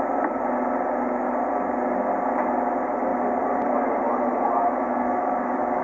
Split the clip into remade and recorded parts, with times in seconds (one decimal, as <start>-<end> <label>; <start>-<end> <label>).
0.0-4.9 recorded; 4.9-5.8 remade